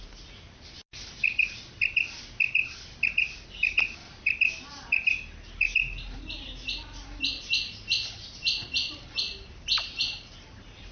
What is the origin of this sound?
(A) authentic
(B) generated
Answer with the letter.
A